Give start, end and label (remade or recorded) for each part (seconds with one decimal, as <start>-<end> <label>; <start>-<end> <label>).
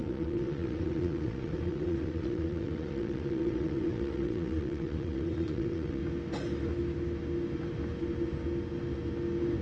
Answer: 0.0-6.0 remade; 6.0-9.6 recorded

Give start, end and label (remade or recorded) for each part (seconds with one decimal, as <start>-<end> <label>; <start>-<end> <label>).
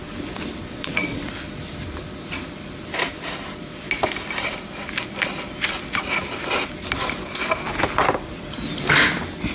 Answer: 0.0-0.7 recorded; 0.7-1.3 remade; 1.3-9.5 recorded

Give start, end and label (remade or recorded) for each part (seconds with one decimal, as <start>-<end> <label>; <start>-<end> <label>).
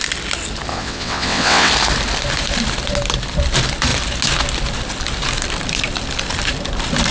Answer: 0.0-0.7 recorded; 0.7-1.7 remade; 1.7-7.1 recorded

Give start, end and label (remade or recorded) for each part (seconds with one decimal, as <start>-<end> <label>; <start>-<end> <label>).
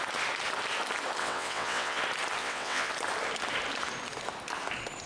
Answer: 0.0-1.2 recorded; 1.2-2.0 remade; 2.0-2.4 recorded; 2.4-2.9 remade; 2.9-5.1 recorded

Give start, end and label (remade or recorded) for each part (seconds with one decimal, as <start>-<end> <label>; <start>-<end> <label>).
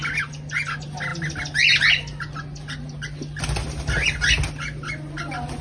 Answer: 0.0-5.6 recorded